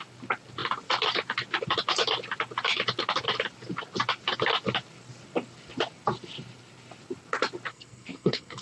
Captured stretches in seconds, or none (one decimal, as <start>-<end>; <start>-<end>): 0.0-7.7